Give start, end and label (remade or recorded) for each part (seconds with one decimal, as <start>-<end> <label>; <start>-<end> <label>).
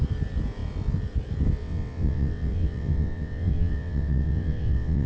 0.0-1.6 recorded; 1.6-5.1 remade